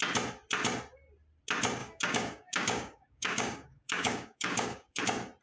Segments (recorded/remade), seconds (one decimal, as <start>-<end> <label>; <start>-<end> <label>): 0.0-1.8 recorded; 1.8-5.0 remade; 5.0-5.4 recorded